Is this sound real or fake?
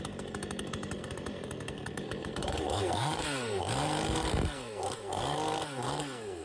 fake